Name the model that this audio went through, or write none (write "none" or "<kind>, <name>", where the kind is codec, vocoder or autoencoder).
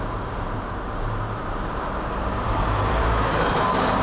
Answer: vocoder, BigVGAN v2